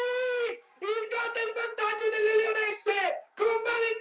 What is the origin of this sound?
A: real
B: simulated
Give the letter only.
B